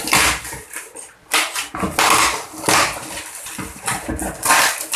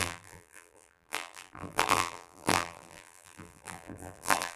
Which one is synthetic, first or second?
second